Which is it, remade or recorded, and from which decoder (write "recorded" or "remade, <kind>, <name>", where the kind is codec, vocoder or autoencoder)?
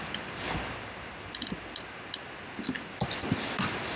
recorded